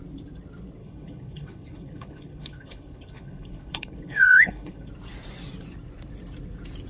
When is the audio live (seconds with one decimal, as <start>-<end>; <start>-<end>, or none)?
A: 0.0-0.8; 4.9-6.9

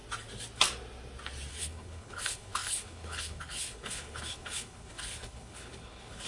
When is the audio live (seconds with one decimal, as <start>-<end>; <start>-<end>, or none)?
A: 0.0-1.5

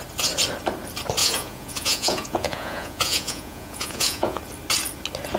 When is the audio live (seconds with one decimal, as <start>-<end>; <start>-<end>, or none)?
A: 0.0-1.2; 4.4-5.4

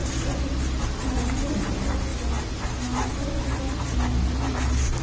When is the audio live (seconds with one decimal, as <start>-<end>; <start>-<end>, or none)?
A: 0.0-5.0

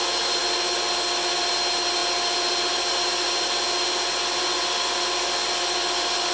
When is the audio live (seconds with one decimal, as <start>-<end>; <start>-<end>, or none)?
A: 0.0-6.3

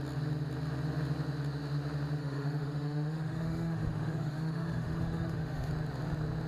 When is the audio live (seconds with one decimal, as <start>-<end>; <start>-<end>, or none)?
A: 0.0-2.2; 5.7-6.5

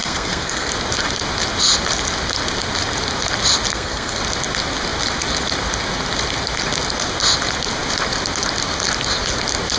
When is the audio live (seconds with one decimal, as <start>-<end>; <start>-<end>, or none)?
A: 0.7-3.7; 4.2-9.8

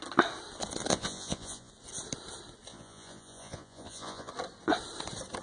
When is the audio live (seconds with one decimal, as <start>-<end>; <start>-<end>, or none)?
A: 0.0-0.9; 1.7-2.7; 4.3-5.4